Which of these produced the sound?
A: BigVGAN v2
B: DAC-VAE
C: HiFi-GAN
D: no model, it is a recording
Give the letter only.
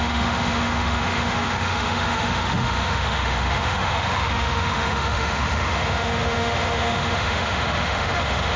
B